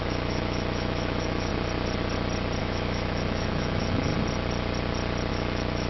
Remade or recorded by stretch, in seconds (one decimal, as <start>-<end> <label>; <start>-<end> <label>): 0.0-1.5 remade; 1.5-2.6 recorded; 2.6-4.1 remade; 4.1-5.3 recorded; 5.3-5.9 remade